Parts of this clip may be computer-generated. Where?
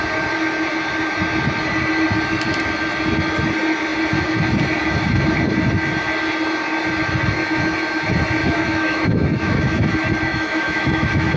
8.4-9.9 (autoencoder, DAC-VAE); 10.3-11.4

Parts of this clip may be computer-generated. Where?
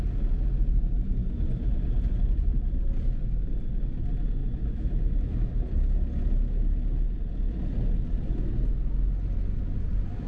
4.4-5.5 (autoencoder, DAC-VAE)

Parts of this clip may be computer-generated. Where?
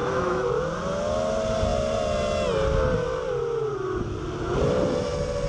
0.0-0.5 (autoencoder, DAC-VAE)